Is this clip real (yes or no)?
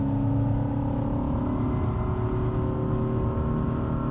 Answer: yes